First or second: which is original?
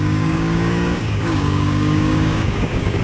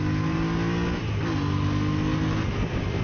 second